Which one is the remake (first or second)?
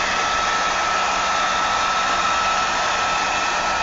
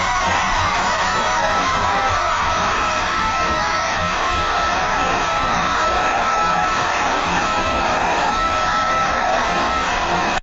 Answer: second